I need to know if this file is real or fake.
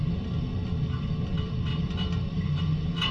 real